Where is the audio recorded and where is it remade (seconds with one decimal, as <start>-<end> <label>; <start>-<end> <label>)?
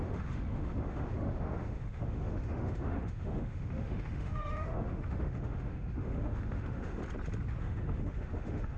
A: 0.0-7.0 remade; 7.0-7.6 recorded; 7.6-8.8 remade